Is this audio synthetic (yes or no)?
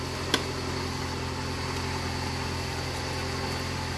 no